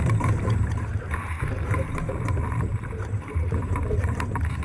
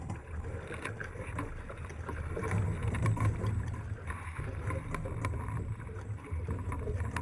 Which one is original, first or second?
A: second